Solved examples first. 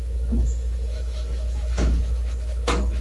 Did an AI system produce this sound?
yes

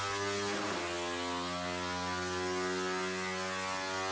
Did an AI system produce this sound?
no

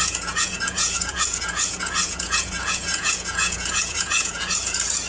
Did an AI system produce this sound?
yes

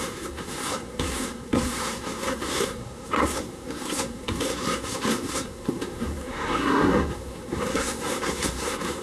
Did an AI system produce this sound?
yes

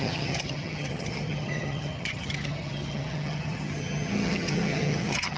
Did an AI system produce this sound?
yes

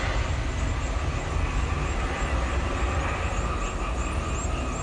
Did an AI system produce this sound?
no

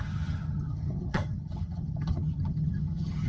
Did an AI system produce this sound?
yes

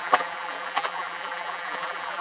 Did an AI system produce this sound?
yes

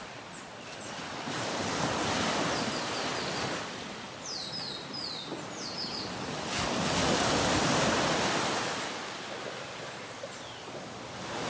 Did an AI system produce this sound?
no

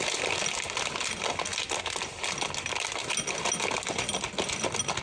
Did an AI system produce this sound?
no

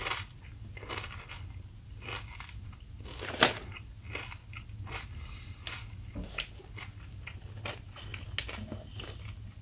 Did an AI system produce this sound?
no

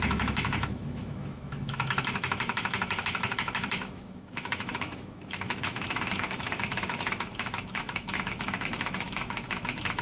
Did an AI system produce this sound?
yes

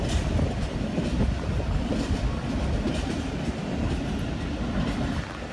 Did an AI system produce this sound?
no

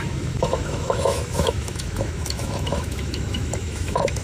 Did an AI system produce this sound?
yes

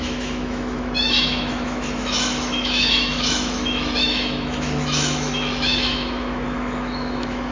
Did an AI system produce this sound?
yes